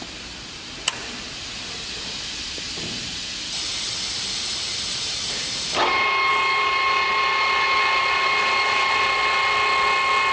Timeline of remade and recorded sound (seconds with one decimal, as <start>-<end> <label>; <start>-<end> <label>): 0.0-10.3 recorded